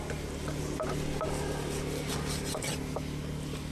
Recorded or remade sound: recorded